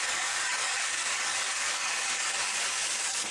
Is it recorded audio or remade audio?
remade